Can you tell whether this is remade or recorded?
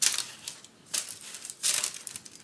remade